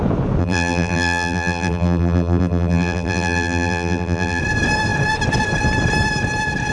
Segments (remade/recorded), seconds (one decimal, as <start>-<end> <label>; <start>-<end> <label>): 0.0-0.4 recorded; 0.4-4.4 remade; 4.4-6.7 recorded